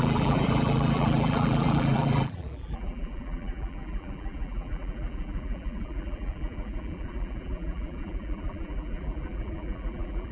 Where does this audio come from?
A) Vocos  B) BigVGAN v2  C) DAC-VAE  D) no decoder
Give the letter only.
B